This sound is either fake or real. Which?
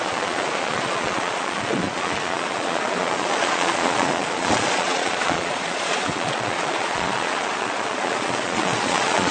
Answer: fake